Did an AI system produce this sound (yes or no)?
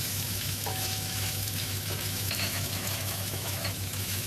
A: yes